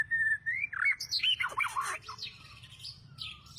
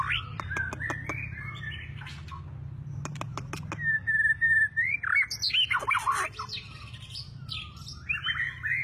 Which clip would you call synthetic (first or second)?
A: first